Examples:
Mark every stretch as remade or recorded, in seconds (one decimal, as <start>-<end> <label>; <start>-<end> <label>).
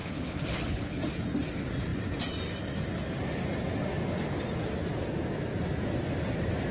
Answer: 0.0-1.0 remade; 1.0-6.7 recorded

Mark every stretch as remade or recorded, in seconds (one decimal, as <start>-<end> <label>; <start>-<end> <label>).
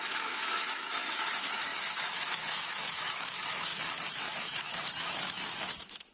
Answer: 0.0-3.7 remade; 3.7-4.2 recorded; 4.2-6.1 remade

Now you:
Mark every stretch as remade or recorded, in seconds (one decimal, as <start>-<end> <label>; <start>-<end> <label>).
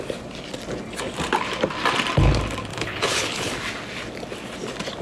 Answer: 0.0-2.7 recorded; 2.7-3.5 remade; 3.5-5.0 recorded